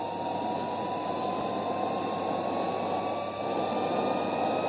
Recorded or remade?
recorded